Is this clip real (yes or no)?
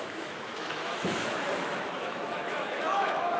no